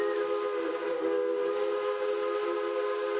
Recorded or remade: recorded